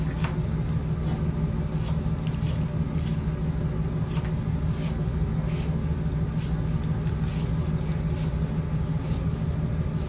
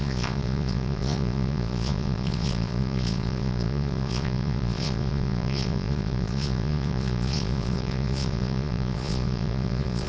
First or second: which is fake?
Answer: second